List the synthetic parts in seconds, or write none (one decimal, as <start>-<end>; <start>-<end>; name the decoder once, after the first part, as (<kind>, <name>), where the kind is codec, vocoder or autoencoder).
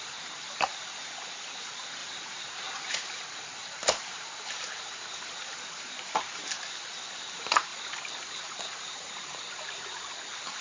0.0-7.7 (vocoder, BigVGAN v2); 8.4-10.6